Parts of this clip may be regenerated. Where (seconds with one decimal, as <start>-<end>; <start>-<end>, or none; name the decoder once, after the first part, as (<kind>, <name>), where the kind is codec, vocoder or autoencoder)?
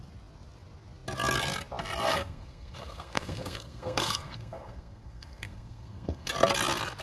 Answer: 2.1-6.3 (codec, SNAC)